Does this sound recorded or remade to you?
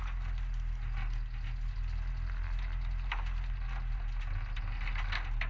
recorded